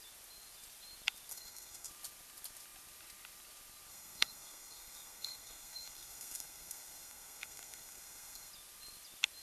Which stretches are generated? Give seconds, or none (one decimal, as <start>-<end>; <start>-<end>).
1.3-1.9; 3.9-8.5